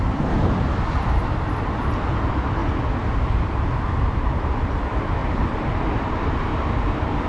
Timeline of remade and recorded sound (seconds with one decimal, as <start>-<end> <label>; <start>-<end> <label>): 0.0-2.6 remade; 2.6-3.4 recorded; 3.4-6.5 remade; 6.5-7.3 recorded